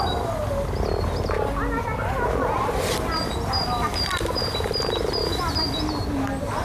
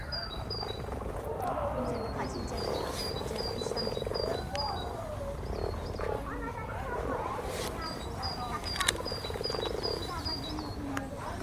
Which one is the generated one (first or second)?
second